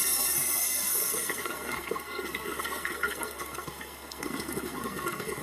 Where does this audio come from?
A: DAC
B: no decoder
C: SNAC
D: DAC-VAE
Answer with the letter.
C